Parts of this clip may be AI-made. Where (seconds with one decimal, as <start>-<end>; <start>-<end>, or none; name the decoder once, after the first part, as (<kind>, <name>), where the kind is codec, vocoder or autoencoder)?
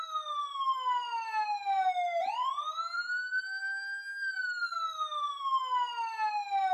2.4-3.4 (vocoder, BigVGAN v2)